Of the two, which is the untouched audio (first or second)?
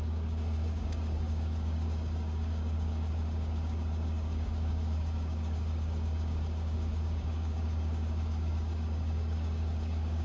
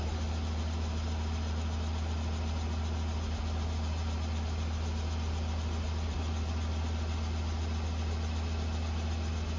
second